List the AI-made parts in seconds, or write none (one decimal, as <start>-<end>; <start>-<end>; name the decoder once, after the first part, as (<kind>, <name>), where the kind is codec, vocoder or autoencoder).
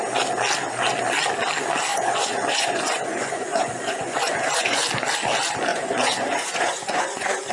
1.9-4.8 (vocoder, Vocos); 5.7-7.5